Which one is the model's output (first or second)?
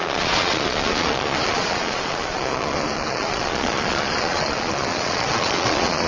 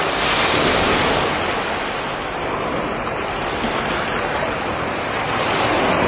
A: first